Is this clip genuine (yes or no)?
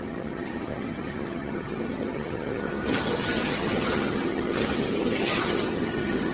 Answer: no